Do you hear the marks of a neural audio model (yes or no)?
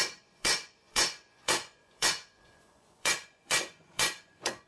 yes